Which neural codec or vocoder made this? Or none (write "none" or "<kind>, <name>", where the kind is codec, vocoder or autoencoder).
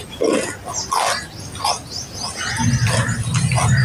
none